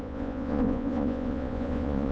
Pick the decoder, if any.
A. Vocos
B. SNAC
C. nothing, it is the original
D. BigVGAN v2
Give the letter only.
A